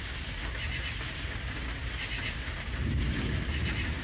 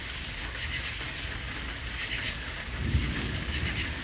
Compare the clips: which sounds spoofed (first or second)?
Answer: second